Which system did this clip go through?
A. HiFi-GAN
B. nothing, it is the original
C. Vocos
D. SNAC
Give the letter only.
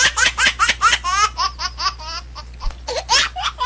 B